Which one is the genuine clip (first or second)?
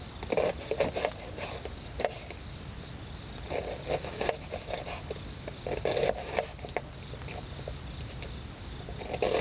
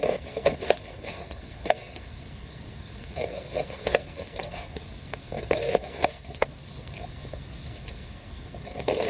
first